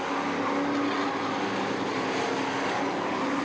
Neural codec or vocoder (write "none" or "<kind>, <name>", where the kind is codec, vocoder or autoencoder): none